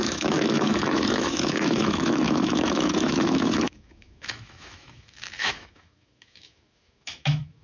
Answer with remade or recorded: remade